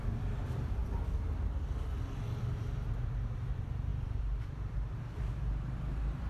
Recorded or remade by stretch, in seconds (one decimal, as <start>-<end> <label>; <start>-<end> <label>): 0.0-0.8 remade; 0.8-2.4 recorded; 2.4-6.3 remade